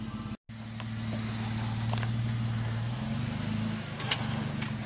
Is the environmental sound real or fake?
real